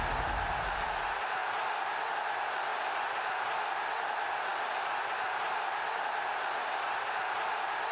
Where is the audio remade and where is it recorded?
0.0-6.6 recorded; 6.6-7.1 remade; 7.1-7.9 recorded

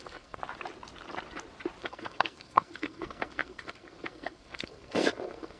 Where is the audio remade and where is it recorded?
0.0-0.4 remade; 0.4-1.8 recorded; 1.8-5.6 remade